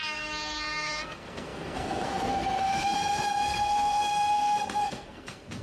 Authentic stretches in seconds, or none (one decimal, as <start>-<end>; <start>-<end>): none